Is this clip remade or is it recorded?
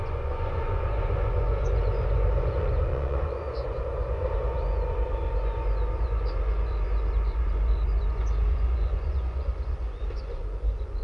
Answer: remade